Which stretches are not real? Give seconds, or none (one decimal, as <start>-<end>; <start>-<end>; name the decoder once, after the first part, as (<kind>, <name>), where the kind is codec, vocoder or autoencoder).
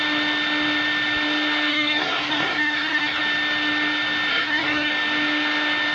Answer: 1.7-3.2 (codec, SNAC); 4.3-4.9